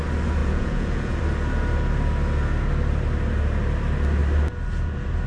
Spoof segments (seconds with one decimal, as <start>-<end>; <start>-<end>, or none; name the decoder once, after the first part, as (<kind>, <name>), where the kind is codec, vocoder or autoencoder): 0.4-1.2 (vocoder, Vocos)

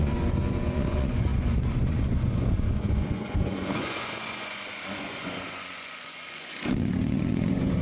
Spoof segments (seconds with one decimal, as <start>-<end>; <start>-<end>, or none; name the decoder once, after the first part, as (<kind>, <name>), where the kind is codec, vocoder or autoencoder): 0.0-7.8 (vocoder, Vocos)

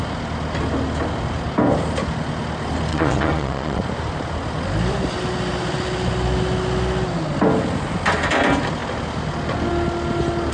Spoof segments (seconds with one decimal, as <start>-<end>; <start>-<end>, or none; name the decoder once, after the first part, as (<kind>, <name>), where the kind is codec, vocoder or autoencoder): 2.9-3.8 (vocoder, Vocos)